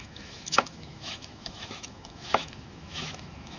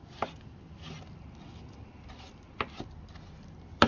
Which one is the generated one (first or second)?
first